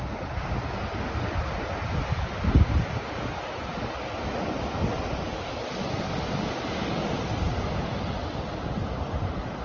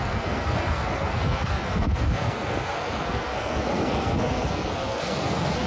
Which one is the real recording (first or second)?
first